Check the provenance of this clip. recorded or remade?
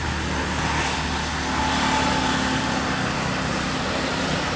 recorded